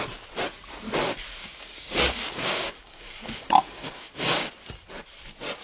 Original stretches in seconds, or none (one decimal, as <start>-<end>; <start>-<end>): 0.0-1.4; 4.5-5.6